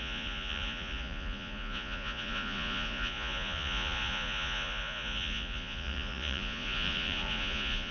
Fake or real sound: fake